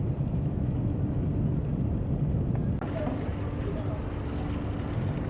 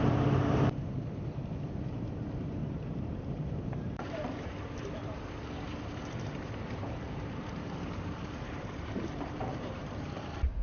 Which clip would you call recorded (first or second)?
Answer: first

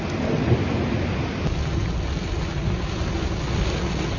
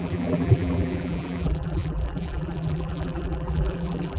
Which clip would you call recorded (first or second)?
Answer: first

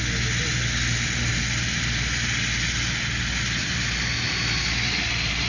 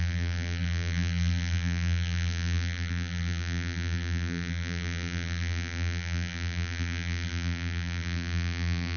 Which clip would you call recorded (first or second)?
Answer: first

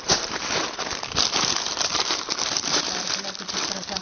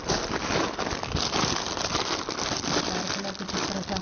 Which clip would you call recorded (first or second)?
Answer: second